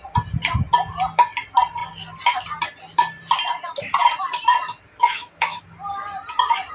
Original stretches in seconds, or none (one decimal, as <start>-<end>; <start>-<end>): 0.0-5.0; 5.6-6.7

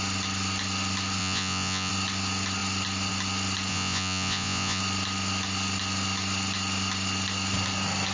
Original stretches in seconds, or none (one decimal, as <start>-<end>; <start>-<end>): 0.0-1.2; 1.9-3.7; 4.8-8.1

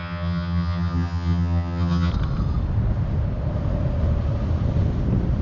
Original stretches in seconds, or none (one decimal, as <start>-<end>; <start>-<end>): 2.1-5.4